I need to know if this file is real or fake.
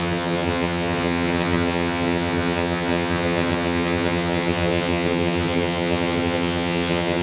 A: fake